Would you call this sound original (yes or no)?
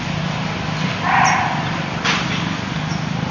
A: yes